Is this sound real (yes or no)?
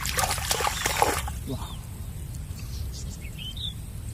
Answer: no